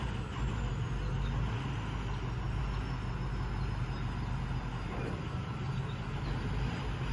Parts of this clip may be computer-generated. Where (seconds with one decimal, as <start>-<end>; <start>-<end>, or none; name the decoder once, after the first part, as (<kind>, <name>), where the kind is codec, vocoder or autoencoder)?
none